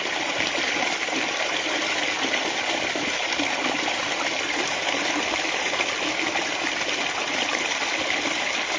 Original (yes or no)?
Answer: yes